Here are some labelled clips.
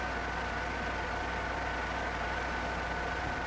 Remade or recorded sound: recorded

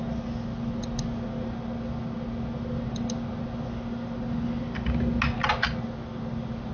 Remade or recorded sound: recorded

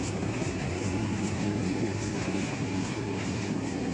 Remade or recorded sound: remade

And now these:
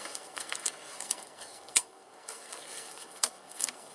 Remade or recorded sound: remade